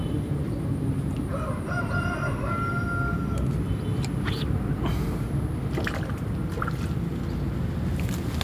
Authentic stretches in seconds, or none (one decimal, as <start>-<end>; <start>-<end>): 1.9-4.9; 5.7-8.4